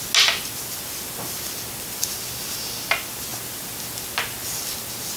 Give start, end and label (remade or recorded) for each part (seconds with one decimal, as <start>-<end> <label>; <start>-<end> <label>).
0.0-5.2 recorded